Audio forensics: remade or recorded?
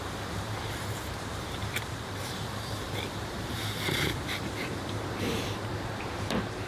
remade